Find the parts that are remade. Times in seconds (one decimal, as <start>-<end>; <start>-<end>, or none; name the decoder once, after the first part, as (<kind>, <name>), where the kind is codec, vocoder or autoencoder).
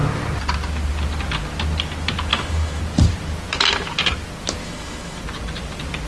2.3-2.8 (autoencoder, DAC-VAE); 4.6-5.2